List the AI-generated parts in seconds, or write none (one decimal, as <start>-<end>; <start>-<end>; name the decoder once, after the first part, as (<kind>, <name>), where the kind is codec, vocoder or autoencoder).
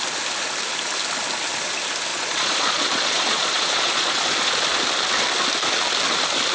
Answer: 2.1-4.5 (vocoder, Vocos)